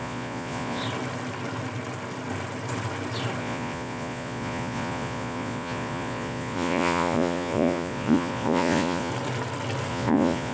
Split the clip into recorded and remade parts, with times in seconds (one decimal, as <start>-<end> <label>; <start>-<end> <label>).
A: 0.0-0.8 remade; 0.8-3.4 recorded; 3.4-9.1 remade; 9.1-9.9 recorded; 9.9-10.5 remade